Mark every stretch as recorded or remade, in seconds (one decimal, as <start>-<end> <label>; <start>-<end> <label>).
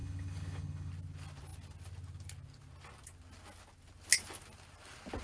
0.0-0.9 remade; 0.9-5.2 recorded